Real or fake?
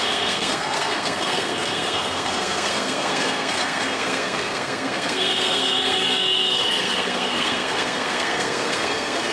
fake